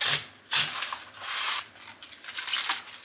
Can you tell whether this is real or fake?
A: real